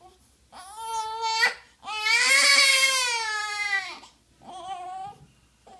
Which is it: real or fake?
real